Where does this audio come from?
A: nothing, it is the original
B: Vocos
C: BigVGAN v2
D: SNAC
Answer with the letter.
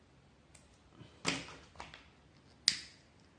A